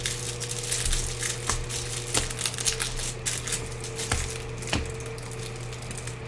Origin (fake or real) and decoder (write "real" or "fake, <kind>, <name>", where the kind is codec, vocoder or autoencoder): real